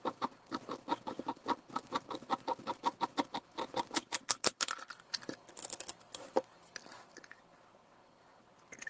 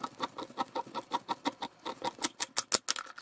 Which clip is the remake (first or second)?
first